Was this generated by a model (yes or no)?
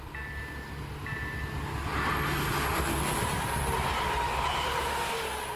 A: no